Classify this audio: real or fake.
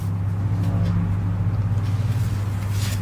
real